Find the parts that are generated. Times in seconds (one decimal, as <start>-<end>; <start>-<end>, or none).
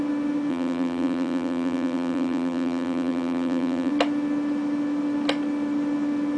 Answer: 0.5-3.9